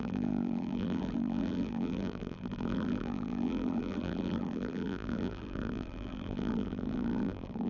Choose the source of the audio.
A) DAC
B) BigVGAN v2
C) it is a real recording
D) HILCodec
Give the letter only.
B